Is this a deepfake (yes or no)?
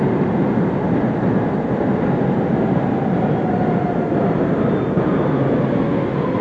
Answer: no